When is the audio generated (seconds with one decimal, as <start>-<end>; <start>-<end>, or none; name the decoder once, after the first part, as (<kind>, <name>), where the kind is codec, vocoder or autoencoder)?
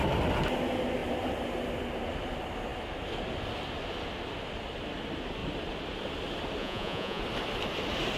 6.6-7.2 (vocoder, Vocos)